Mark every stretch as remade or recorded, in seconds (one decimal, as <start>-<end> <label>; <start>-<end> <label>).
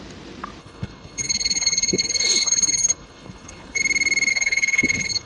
0.0-0.6 recorded; 0.6-3.8 remade; 3.8-4.3 recorded; 4.3-5.3 remade